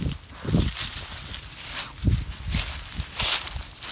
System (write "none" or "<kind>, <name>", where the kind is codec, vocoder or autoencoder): none